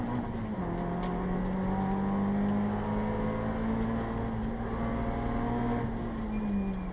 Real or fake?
real